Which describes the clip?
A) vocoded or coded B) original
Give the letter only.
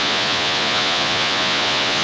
A